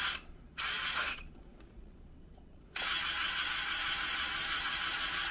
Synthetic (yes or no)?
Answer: yes